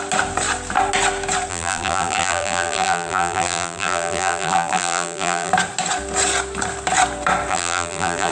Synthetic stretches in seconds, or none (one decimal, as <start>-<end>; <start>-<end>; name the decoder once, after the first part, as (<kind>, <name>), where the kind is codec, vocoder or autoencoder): 1.5-5.5 (vocoder, BigVGAN v2); 7.5-8.3